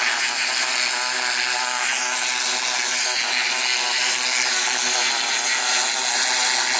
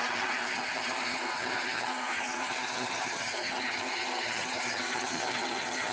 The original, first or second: first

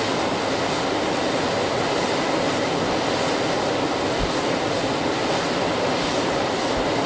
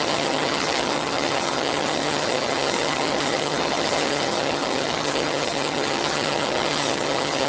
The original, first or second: first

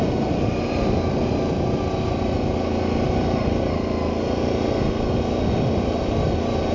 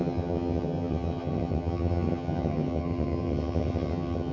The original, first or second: first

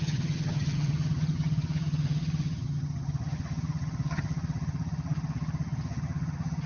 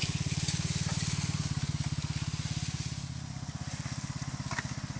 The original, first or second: second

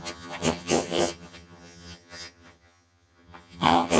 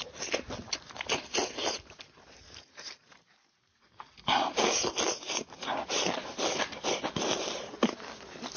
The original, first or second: second